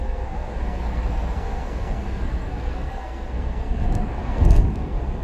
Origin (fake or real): fake